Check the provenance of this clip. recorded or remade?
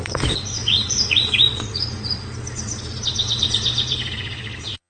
remade